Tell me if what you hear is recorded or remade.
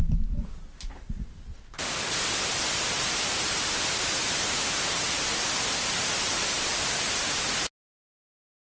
recorded